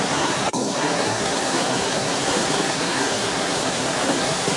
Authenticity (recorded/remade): remade